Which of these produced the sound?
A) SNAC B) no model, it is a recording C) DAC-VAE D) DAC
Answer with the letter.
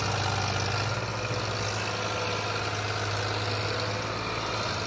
B